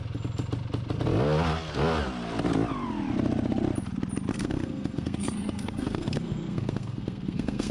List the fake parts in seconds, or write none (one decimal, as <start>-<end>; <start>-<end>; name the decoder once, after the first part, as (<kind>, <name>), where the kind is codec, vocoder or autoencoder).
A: 4.3-7.7 (codec, SNAC)